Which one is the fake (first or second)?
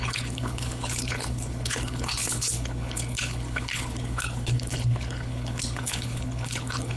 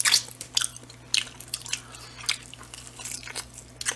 first